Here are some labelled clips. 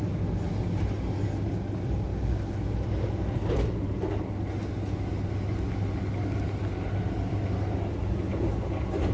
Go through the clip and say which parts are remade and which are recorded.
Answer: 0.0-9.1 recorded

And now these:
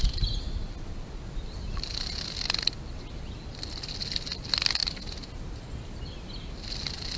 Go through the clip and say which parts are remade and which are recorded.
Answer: 0.0-7.2 recorded

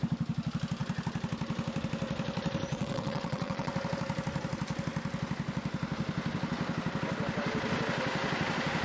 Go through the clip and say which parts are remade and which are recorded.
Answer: 0.0-2.7 recorded; 2.7-3.7 remade; 3.7-8.8 recorded

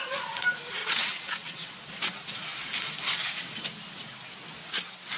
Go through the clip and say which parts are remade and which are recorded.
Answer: 0.0-0.8 recorded; 0.8-1.7 remade; 1.7-5.2 recorded

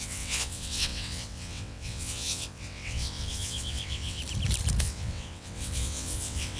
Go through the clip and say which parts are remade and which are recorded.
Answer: 0.0-4.2 remade; 4.2-4.8 recorded; 4.8-6.6 remade

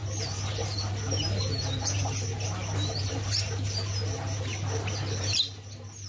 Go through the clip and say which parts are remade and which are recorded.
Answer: 0.0-6.1 recorded

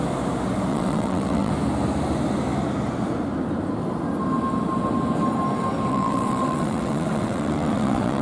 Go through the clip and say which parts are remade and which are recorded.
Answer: 0.0-0.7 recorded; 0.7-1.5 remade; 1.5-5.9 recorded; 5.9-8.2 remade